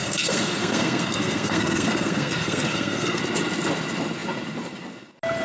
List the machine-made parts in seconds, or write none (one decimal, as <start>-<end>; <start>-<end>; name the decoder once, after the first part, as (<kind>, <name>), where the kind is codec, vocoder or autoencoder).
0.0-3.2 (codec, SNAC)